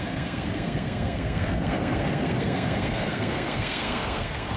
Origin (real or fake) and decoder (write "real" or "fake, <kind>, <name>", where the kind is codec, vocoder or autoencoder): fake, codec, SNAC